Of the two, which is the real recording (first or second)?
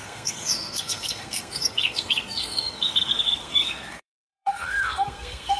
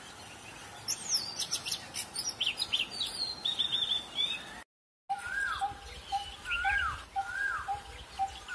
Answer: second